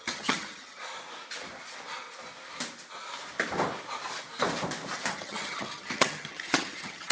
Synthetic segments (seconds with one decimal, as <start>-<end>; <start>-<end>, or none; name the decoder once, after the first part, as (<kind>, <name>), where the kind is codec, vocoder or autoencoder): 0.0-0.8 (vocoder, HiFi-GAN); 5.1-7.1

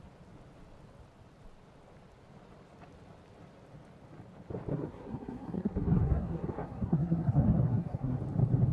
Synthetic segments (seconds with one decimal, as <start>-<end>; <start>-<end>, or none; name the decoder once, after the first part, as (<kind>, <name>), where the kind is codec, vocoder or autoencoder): 4.7-8.2 (codec, SNAC)

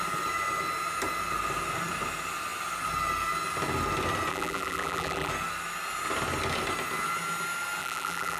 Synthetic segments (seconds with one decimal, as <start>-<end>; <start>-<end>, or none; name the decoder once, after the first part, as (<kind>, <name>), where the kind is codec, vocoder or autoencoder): 4.3-5.3 (vocoder, BigVGAN v2); 7.8-8.4